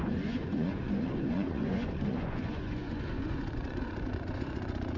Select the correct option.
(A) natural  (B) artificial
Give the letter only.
B